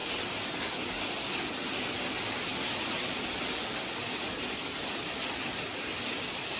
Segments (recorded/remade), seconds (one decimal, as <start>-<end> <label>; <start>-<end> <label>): 0.0-6.6 recorded